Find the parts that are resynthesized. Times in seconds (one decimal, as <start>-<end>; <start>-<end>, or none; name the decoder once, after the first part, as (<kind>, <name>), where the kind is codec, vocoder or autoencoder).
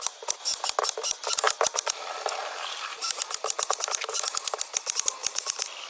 2.4-3.2 (vocoder, BigVGAN v2); 5.2-5.9